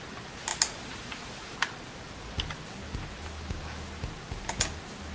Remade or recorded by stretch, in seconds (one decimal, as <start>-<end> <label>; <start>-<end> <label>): 0.0-5.1 recorded